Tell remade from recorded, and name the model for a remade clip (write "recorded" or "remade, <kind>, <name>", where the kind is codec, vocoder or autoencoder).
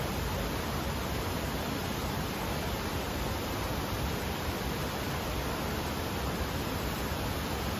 remade, vocoder, BigVGAN v2